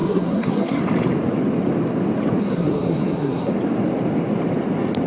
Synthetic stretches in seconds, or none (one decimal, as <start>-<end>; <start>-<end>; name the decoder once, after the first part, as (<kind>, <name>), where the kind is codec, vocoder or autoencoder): 0.0-0.8 (codec, SNAC); 2.4-3.5

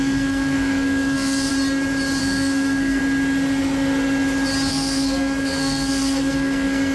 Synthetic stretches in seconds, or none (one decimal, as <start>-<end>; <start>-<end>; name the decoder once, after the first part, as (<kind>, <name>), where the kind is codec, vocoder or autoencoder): 0.0-1.5 (codec, SNAC); 2.2-3.0; 4.7-6.9

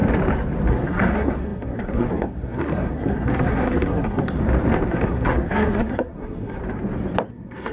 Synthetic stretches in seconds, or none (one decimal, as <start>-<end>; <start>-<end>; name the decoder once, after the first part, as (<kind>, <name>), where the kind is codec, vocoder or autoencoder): 0.7-4.4 (codec, SNAC); 4.9-6.6; 7.3-7.7

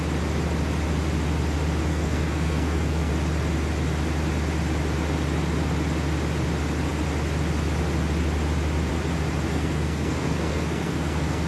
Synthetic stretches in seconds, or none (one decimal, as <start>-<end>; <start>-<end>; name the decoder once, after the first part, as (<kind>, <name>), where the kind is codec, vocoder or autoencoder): 1.9-3.1 (codec, SNAC); 9.5-11.5

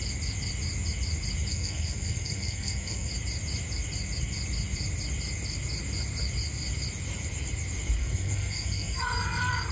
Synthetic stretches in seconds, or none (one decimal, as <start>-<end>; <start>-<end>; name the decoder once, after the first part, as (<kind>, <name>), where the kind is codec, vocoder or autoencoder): 1.5-3.1 (codec, SNAC); 8.0-9.7

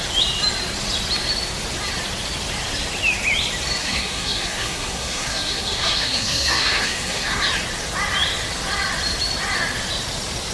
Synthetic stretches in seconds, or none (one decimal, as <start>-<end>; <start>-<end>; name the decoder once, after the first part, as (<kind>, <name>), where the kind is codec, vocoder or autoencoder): 3.8-7.4 (codec, SNAC)